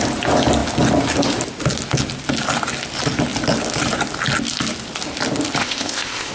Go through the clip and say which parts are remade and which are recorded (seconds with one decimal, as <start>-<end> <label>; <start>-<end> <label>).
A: 0.0-5.6 recorded; 5.6-6.3 remade